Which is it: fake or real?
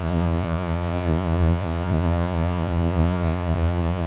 fake